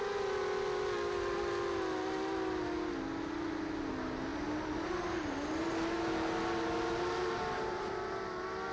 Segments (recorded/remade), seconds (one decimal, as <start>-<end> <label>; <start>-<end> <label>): 0.0-8.7 recorded